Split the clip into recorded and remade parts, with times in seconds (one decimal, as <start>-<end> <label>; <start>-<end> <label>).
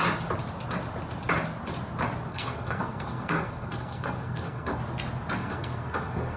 0.0-2.3 recorded; 2.3-4.8 remade; 4.8-5.4 recorded; 5.4-6.4 remade